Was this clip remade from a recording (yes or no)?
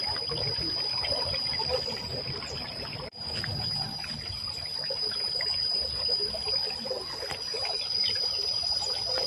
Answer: yes